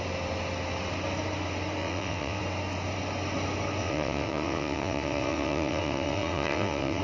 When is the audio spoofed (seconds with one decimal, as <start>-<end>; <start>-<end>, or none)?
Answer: 1.8-2.4; 3.8-7.0